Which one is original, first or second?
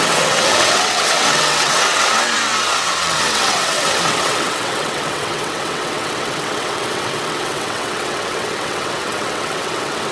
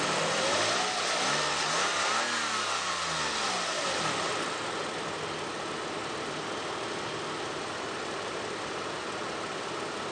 second